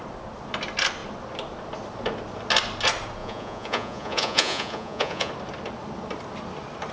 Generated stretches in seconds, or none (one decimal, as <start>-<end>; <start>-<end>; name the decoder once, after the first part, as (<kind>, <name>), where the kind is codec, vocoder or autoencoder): 3.2-5.3 (vocoder, Vocos)